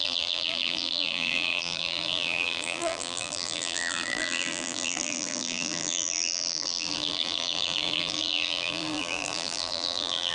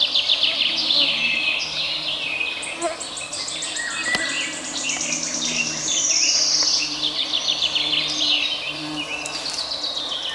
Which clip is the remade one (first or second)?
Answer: first